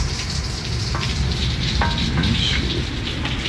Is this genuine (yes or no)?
yes